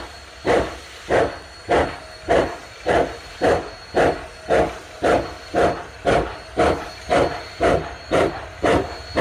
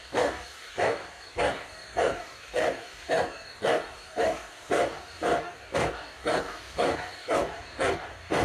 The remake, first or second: second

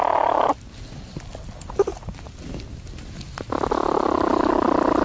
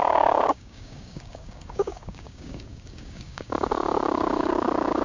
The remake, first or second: second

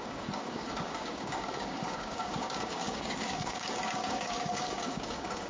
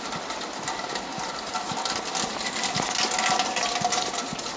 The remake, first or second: first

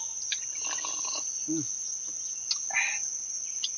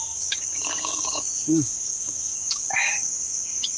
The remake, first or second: second